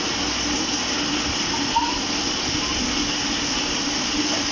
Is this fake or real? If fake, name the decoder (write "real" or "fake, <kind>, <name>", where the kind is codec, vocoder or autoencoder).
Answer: real